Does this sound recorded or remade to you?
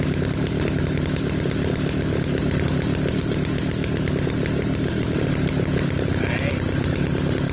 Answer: recorded